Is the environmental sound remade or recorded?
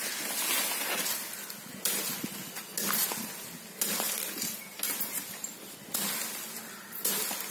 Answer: recorded